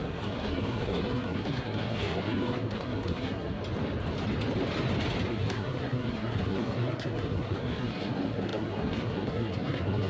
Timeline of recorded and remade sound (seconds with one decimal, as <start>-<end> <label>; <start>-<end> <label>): 0.0-3.6 remade; 3.6-5.3 recorded; 5.3-10.1 remade